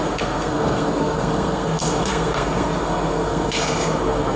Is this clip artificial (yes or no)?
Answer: yes